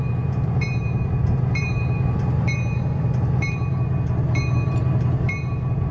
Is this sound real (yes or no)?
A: no